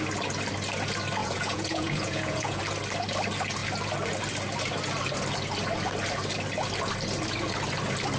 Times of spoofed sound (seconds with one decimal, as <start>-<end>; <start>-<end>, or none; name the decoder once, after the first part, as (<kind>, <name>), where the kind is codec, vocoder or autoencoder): 1.2-2.6 (vocoder, Vocos)